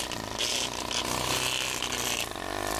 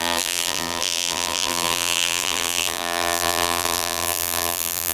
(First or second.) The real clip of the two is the first